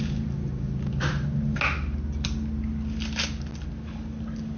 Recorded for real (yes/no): yes